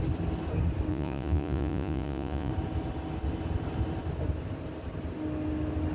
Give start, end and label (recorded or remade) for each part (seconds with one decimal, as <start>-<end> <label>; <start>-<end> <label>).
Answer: 0.0-0.9 recorded; 0.9-2.5 remade; 2.5-5.9 recorded